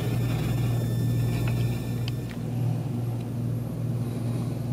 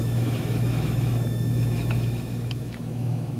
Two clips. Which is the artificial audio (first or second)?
second